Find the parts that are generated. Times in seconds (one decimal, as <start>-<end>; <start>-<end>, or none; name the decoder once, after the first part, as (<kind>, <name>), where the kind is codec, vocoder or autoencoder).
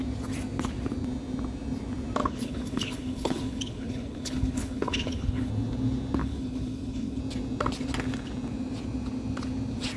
2.2-5.5 (codec, HILCodec); 6.2-7.2